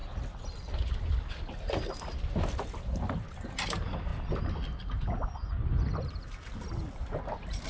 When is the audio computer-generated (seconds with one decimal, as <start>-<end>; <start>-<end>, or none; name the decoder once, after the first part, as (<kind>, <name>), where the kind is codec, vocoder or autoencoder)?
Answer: none